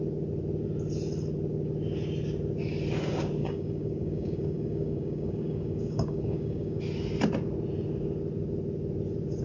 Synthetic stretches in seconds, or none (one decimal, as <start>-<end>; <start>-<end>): 3.4-6.8